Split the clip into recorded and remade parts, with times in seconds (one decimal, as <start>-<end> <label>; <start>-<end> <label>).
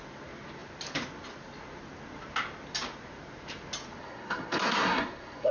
0.0-4.0 recorded; 4.0-5.5 remade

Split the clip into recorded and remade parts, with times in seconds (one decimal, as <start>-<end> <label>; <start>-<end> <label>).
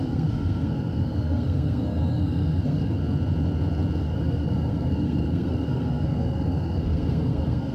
0.0-3.0 remade; 3.0-4.0 recorded; 4.0-7.7 remade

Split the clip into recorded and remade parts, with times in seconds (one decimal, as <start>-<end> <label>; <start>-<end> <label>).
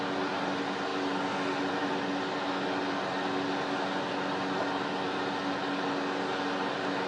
0.0-7.1 recorded